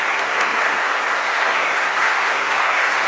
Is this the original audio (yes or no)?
no